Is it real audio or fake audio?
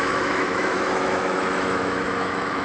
fake